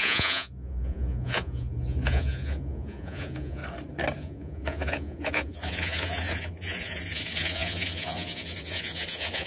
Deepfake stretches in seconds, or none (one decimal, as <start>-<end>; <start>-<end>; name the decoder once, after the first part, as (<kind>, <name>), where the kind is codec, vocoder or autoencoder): 0.0-3.6 (vocoder, Vocos); 4.2-9.5

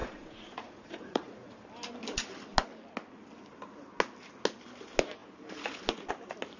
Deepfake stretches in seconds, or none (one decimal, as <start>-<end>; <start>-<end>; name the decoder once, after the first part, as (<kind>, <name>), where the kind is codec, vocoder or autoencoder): 0.0-1.5 (vocoder, Vocos)

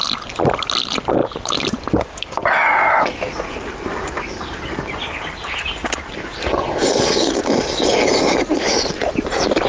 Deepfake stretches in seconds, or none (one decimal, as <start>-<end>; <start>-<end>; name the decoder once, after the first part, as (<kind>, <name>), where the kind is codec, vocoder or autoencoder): none